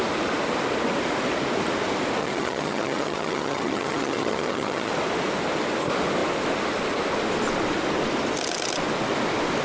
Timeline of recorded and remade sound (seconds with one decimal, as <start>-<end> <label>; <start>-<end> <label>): 0.0-2.2 recorded; 2.2-4.9 remade; 4.9-9.6 recorded

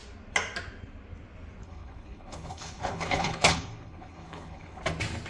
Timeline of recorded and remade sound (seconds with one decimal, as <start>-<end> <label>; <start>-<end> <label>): 0.0-1.6 recorded; 1.6-4.8 remade; 4.8-5.3 recorded

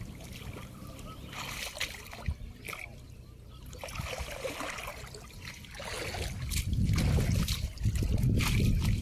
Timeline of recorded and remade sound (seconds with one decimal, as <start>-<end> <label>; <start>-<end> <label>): 0.0-9.0 recorded

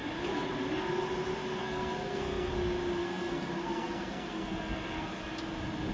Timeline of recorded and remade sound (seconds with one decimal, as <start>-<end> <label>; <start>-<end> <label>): 0.0-1.6 recorded; 1.6-2.5 remade; 2.5-3.0 recorded; 3.0-5.2 remade; 5.2-5.9 recorded

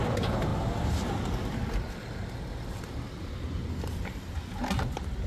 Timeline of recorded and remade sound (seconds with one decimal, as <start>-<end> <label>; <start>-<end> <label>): 0.0-5.3 recorded

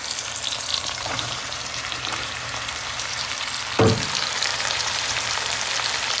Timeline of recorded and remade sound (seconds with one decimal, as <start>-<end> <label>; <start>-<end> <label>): 0.0-0.7 recorded; 0.7-3.3 remade; 3.3-4.5 recorded; 4.5-5.6 remade; 5.6-6.2 recorded

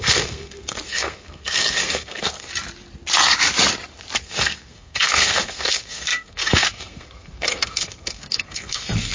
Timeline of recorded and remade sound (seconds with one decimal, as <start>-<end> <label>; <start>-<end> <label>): 0.0-2.5 remade; 2.5-4.2 recorded; 4.2-9.1 remade

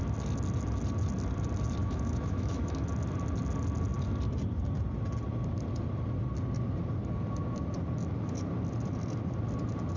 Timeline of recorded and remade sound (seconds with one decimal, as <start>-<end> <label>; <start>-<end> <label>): 0.0-1.8 recorded; 1.8-2.9 remade; 2.9-10.0 recorded